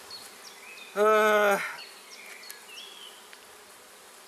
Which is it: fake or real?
real